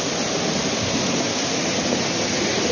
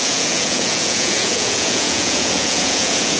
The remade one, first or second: second